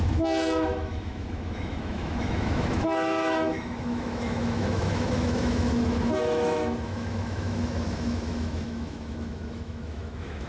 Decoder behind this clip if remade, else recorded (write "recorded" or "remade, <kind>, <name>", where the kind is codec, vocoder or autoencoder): remade, autoencoder, DAC-VAE